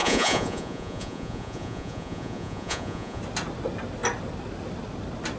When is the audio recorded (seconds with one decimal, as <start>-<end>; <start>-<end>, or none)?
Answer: 3.2-5.4